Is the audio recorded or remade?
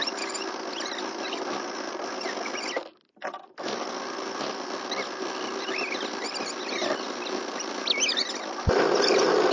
recorded